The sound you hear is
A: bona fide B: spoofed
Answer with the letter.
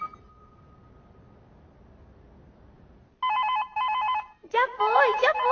A